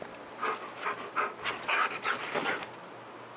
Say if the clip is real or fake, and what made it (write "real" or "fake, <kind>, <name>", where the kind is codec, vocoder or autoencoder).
real